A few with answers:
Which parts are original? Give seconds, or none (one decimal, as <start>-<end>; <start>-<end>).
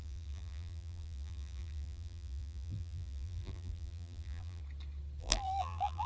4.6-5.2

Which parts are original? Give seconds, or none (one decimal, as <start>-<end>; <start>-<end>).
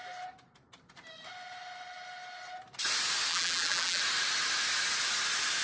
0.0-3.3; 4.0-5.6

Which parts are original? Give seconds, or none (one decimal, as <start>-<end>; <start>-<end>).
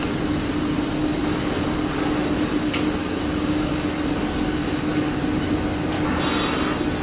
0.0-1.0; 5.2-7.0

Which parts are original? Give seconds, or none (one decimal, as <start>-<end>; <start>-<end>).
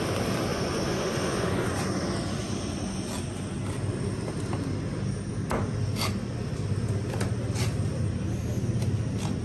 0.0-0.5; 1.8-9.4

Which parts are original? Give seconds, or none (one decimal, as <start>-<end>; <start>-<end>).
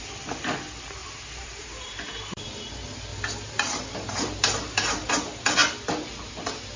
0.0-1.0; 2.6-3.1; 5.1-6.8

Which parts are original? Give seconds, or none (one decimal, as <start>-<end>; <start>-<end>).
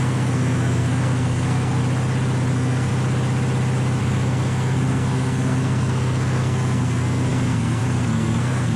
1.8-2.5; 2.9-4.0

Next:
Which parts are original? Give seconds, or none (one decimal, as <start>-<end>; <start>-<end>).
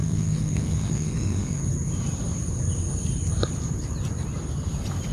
1.6-5.1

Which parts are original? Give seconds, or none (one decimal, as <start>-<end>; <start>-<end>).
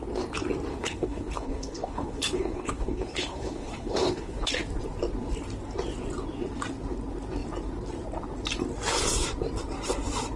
0.0-0.7; 4.5-10.4